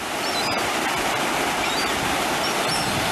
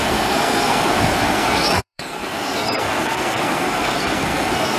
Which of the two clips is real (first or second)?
first